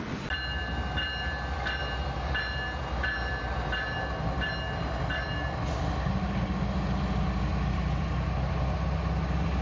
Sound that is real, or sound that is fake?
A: real